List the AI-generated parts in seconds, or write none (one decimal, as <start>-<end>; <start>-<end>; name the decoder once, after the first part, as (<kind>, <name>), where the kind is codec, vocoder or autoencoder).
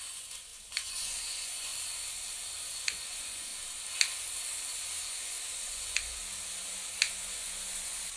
0.0-1.7 (vocoder, Vocos); 2.8-3.5; 5.1-6.2; 7.1-8.2